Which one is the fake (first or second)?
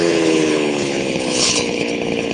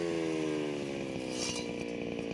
first